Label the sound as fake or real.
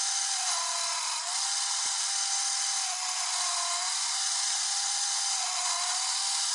real